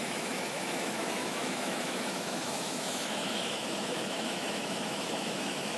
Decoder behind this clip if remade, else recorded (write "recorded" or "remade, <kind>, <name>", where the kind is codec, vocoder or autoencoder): remade, autoencoder, DAC-VAE